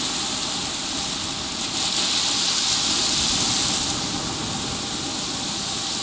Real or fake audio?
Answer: real